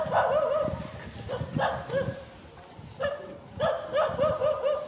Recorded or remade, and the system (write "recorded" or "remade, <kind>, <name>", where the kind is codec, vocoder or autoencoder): recorded